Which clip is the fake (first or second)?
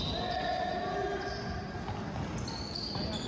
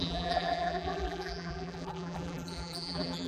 second